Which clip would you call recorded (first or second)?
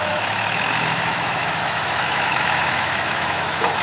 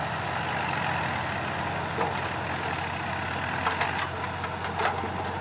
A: second